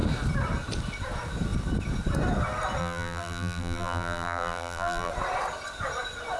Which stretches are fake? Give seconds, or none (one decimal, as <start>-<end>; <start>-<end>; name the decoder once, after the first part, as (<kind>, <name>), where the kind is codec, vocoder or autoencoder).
2.8-5.1 (vocoder, BigVGAN v2)